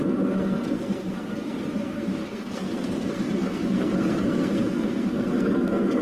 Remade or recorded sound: remade